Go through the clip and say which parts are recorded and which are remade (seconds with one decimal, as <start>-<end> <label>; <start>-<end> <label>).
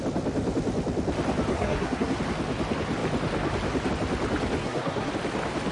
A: 0.0-1.5 recorded; 1.5-2.2 remade; 2.2-4.6 recorded; 4.6-5.1 remade; 5.1-5.7 recorded